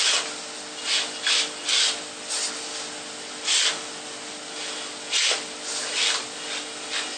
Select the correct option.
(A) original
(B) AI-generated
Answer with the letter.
A